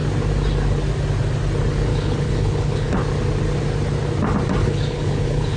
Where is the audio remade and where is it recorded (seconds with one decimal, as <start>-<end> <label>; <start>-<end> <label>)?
0.0-1.9 recorded; 1.9-2.9 remade; 2.9-4.6 recorded; 4.6-5.6 remade